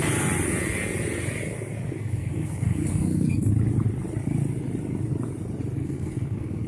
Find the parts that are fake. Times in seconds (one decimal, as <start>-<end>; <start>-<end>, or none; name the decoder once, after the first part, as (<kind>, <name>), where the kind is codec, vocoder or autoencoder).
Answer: 2.0-3.5 (codec, SNAC); 5.8-6.7